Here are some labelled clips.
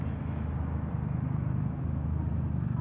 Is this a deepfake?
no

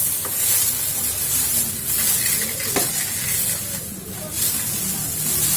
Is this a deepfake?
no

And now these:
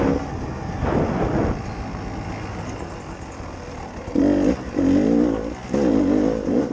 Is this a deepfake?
no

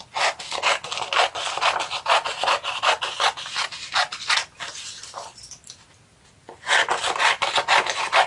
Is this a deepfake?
no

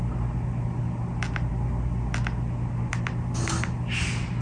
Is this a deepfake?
no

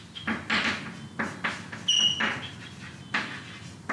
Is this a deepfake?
no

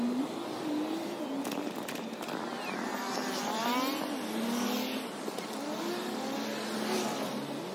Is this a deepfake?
no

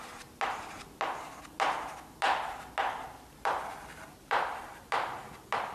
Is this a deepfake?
no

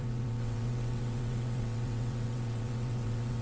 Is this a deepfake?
yes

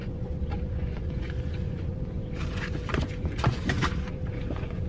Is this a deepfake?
yes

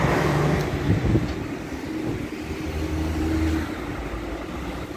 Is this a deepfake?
no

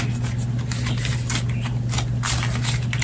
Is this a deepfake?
no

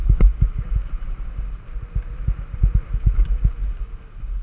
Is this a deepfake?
no